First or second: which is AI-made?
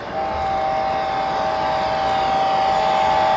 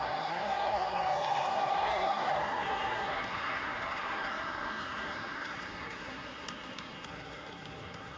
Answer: second